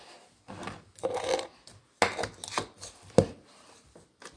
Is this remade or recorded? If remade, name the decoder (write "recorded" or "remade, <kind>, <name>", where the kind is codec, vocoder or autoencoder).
recorded